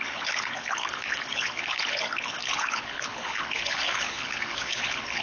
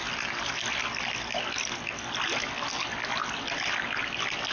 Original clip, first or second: second